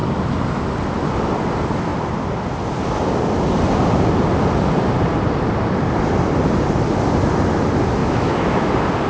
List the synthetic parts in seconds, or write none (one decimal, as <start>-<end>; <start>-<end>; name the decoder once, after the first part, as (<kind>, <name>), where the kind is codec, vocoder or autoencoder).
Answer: 8.0-8.7 (autoencoder, DAC-VAE)